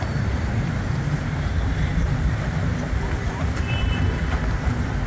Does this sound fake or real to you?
fake